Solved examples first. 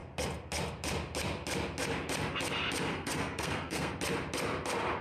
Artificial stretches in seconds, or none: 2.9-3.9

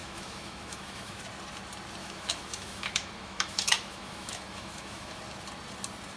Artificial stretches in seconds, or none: 0.0-1.2; 2.0-5.2